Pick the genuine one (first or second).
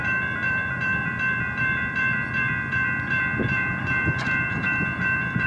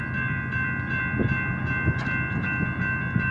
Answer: second